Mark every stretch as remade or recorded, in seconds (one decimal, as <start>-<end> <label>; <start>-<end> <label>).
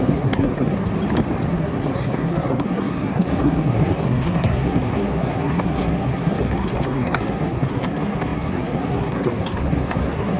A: 0.0-0.9 remade; 0.9-1.5 recorded; 1.5-10.4 remade